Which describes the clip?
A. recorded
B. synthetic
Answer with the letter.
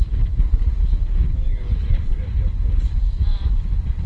B